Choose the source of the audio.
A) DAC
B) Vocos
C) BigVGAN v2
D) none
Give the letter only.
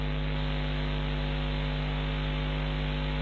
D